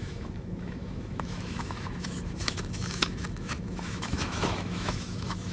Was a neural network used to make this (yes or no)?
yes